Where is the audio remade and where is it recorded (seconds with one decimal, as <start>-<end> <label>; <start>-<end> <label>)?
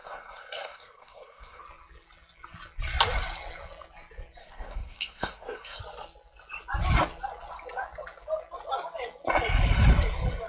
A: 0.0-1.6 remade; 1.6-4.4 recorded; 4.4-5.8 remade; 5.8-10.5 recorded